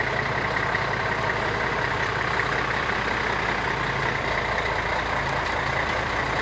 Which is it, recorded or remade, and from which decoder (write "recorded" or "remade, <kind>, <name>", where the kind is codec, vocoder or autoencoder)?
recorded